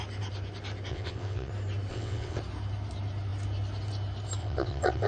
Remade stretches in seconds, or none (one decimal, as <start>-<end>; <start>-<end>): 0.9-1.5; 1.9-2.4; 4.4-5.1